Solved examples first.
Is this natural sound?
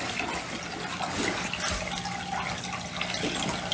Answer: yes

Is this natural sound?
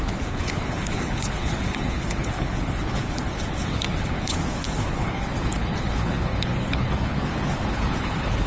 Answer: no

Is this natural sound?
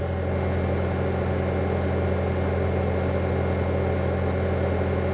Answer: yes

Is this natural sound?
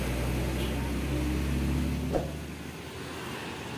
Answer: yes